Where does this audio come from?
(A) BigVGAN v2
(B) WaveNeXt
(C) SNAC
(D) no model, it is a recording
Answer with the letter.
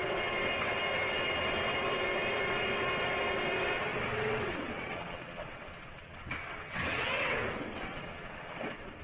B